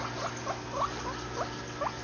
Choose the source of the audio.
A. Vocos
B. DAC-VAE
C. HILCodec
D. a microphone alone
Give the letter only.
D